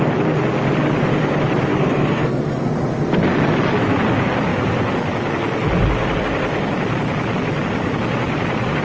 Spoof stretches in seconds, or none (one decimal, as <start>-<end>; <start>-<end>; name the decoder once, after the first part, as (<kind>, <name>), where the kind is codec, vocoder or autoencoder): 1.7-2.7 (codec, SNAC)